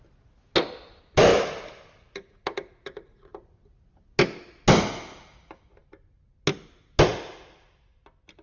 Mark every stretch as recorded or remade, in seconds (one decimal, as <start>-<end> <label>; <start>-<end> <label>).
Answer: 0.0-8.4 recorded